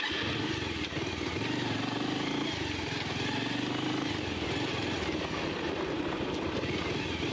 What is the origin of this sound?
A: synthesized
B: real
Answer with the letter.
B